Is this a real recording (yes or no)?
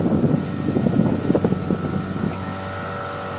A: yes